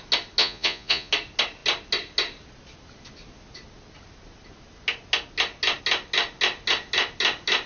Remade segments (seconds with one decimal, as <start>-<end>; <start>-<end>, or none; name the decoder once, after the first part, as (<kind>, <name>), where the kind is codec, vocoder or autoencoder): 0.4-1.1 (vocoder, Vocos)